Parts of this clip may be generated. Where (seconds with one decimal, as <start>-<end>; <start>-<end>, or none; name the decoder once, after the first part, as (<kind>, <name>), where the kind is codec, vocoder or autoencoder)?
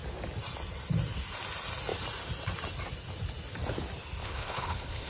4.2-5.1 (codec, HILCodec)